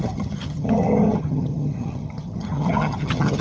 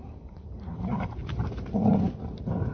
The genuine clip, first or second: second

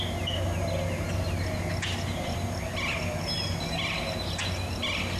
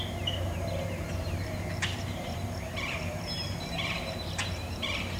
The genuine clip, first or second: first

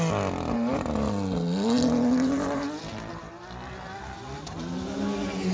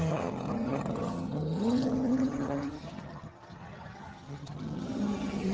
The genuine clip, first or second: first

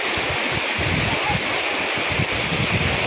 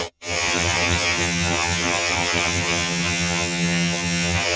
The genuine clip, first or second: first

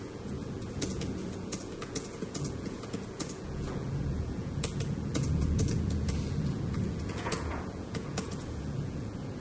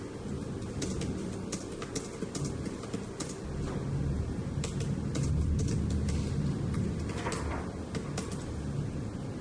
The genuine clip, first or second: second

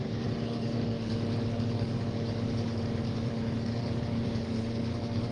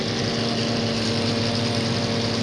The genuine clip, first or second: second